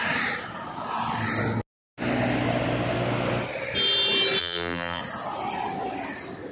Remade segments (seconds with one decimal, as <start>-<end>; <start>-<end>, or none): 4.4-5.0